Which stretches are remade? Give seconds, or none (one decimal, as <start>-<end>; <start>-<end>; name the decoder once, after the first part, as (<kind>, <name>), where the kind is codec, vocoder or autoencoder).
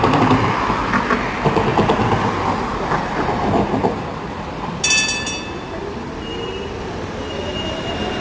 none